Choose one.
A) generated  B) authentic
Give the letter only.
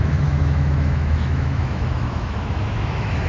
A